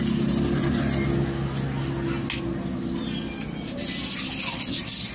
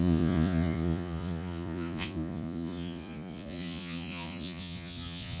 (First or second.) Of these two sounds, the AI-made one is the second